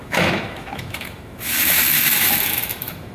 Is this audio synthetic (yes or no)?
yes